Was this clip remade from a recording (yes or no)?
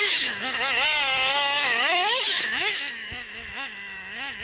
yes